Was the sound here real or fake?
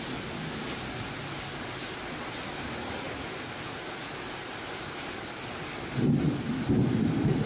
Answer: real